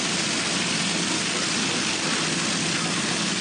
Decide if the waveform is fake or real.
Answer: real